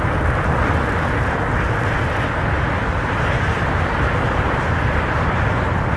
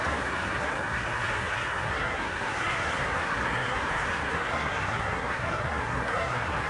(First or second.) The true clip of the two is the first